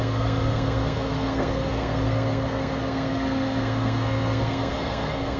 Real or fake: fake